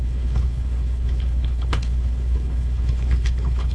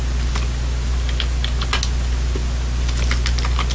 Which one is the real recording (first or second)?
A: second